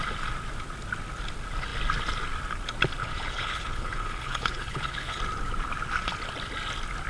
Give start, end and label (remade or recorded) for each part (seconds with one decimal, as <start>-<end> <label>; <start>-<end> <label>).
0.0-3.0 recorded; 3.0-5.2 remade; 5.2-7.1 recorded

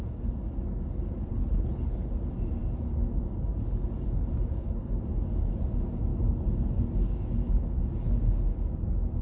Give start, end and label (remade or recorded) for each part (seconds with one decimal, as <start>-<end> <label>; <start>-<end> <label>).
0.0-1.3 recorded; 1.3-2.1 remade; 2.1-9.2 recorded

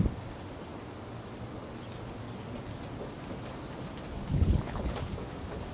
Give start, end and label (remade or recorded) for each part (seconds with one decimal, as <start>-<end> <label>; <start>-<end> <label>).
0.0-4.3 recorded; 4.3-5.1 remade; 5.1-5.7 recorded

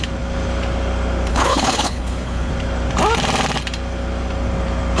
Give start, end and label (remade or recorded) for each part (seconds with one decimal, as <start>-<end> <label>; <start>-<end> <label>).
0.0-1.3 recorded; 1.3-2.5 remade; 2.5-5.0 recorded

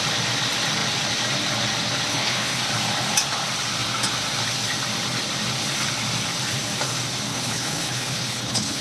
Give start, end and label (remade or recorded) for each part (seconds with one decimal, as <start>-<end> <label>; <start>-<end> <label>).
0.0-2.1 recorded; 2.1-2.6 remade; 2.6-7.3 recorded; 7.3-8.8 remade